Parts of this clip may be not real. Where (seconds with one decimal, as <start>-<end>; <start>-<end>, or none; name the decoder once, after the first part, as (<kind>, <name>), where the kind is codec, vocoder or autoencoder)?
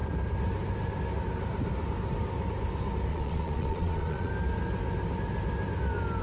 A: 3.1-4.3 (vocoder, Vocos)